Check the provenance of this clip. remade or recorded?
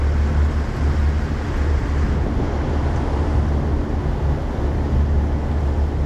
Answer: recorded